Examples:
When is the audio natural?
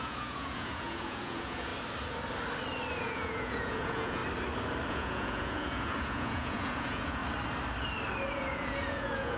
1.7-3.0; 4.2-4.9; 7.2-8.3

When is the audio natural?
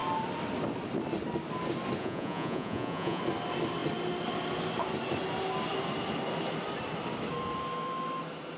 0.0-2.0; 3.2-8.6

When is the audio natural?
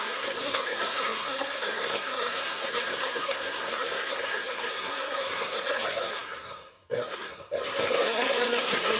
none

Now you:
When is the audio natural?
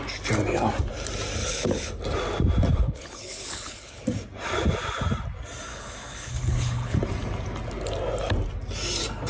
0.0-1.4; 1.9-2.7; 4.0-5.7; 7.0-9.3